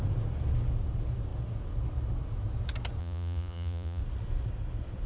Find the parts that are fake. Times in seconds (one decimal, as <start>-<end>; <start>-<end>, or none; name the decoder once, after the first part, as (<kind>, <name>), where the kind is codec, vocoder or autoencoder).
3.0-4.0 (vocoder, Vocos)